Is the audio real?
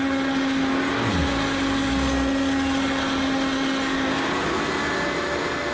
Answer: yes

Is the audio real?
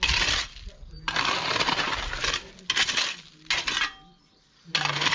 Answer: yes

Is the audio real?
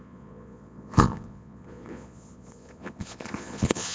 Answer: no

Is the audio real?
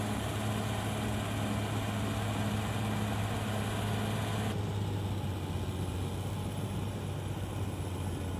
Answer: yes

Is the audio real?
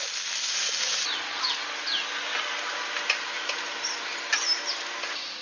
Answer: yes